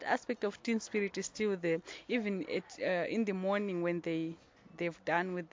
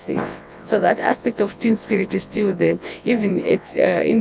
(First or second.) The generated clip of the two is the second